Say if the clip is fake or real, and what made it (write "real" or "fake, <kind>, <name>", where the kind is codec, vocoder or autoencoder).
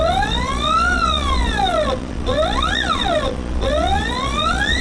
fake, vocoder, Vocos